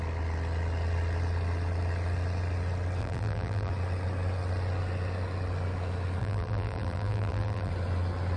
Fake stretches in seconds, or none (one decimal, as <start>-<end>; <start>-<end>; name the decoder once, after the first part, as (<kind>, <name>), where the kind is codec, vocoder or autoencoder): 3.0-3.7 (vocoder, BigVGAN v2); 6.2-7.7